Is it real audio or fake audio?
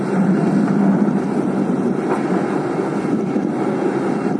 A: fake